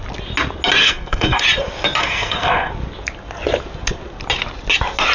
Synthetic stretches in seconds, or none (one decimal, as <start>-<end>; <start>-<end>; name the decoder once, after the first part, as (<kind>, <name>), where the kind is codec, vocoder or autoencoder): 0.8-1.4 (codec, SNAC); 2.0-2.7